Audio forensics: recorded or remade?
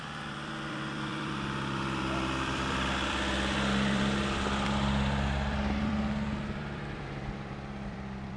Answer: remade